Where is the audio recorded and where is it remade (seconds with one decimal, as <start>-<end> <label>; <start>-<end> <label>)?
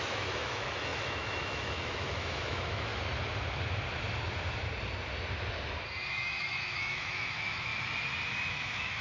0.0-2.9 remade; 2.9-6.1 recorded; 6.1-7.7 remade; 7.7-8.5 recorded; 8.5-9.0 remade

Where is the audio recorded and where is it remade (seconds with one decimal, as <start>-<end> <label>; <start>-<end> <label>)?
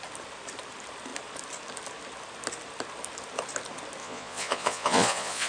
0.0-4.0 recorded; 4.0-5.5 remade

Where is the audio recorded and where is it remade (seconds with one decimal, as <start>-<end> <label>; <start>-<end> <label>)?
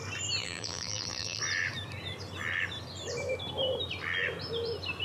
0.0-0.4 recorded; 0.4-1.4 remade; 1.4-5.0 recorded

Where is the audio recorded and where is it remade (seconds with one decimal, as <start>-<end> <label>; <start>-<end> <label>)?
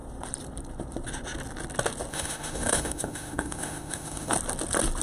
0.0-2.1 recorded; 2.1-4.3 remade; 4.3-5.0 recorded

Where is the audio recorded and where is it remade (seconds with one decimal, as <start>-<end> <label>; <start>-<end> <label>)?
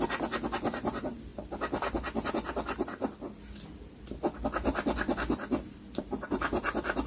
0.0-7.1 recorded